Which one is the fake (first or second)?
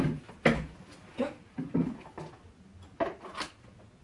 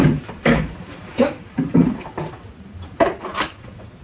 second